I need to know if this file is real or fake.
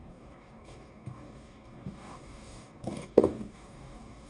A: fake